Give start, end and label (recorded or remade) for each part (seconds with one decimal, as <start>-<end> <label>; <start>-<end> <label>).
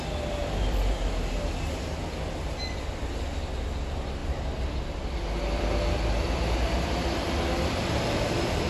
0.0-0.4 recorded; 0.4-1.1 remade; 1.1-4.2 recorded; 4.2-8.7 remade